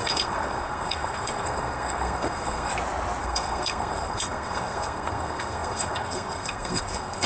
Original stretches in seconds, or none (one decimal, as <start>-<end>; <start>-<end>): 2.7-3.2